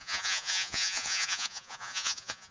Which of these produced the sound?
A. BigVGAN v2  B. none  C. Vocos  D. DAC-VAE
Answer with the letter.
C